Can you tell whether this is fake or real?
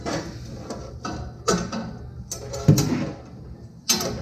real